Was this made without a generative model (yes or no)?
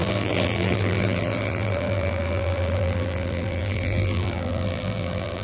no